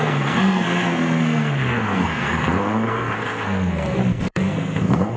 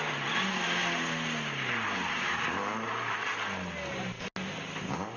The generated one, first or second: first